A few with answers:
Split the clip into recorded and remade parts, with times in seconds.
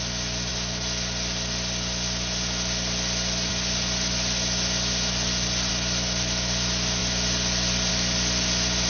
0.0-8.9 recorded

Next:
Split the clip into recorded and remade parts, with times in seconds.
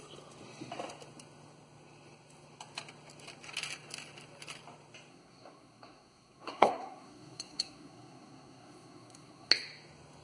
0.0-5.1 recorded; 5.1-9.5 remade; 9.5-10.2 recorded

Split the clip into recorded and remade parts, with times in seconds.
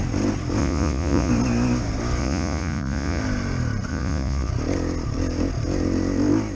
0.0-0.6 recorded; 0.6-1.3 remade; 1.3-2.2 recorded; 2.2-3.2 remade; 3.2-3.9 recorded; 3.9-4.5 remade; 4.5-6.5 recorded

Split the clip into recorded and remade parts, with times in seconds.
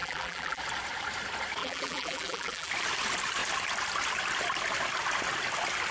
0.0-0.6 remade; 0.6-1.6 recorded; 1.6-2.7 remade; 2.7-5.9 recorded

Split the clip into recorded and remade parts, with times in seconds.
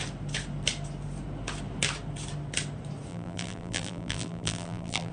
0.0-3.1 recorded; 3.1-5.1 remade